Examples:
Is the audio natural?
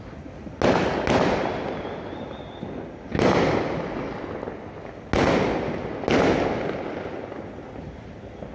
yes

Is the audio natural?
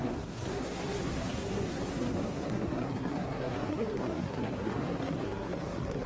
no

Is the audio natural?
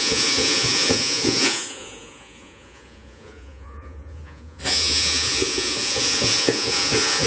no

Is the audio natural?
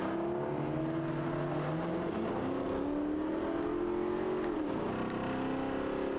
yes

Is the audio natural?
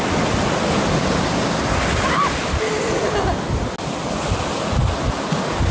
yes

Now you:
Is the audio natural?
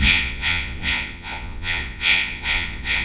no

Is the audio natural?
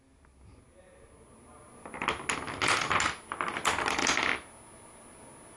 yes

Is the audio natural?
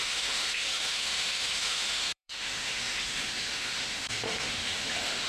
no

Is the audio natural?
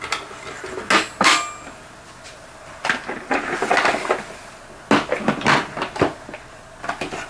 yes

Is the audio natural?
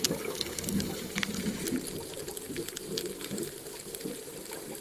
no